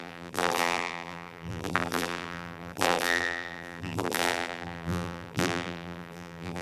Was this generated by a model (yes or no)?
yes